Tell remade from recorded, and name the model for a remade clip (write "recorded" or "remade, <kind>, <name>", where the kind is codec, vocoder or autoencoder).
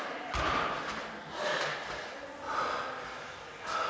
recorded